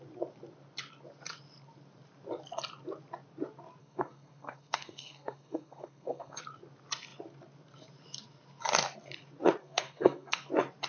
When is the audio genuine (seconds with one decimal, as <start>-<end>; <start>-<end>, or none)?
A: 0.0-3.8; 6.4-9.6; 10.5-10.9